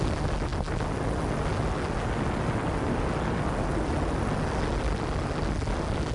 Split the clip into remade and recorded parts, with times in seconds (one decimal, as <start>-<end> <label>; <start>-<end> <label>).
0.0-6.1 recorded